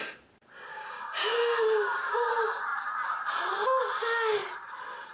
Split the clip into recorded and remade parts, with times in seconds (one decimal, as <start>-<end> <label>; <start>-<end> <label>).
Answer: 0.0-0.7 recorded; 0.7-2.3 remade; 2.3-5.1 recorded